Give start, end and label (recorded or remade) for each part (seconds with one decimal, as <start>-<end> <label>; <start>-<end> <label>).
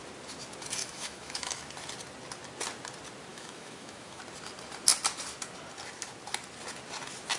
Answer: 0.0-0.8 recorded; 0.8-1.6 remade; 1.6-3.3 recorded; 3.3-4.2 remade; 4.2-7.4 recorded